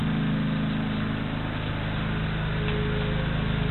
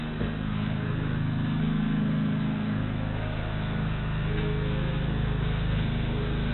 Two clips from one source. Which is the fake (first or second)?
second